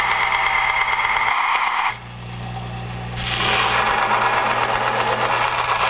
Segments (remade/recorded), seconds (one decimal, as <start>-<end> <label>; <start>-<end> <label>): 0.0-1.3 recorded; 1.3-1.9 remade; 1.9-5.9 recorded